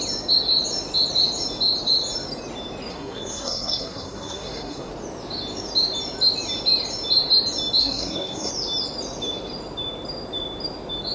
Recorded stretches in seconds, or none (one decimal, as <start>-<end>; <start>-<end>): 0.0-2.9; 4.9-7.8; 8.5-11.1